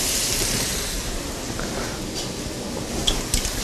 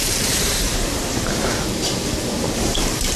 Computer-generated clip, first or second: second